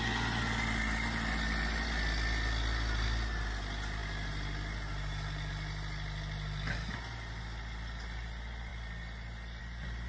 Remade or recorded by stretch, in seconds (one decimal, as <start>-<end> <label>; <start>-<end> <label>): 0.0-10.1 recorded